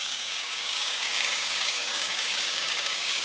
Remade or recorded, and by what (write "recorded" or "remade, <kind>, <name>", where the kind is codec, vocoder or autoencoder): remade, codec, DAC